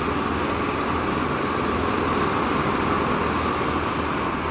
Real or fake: real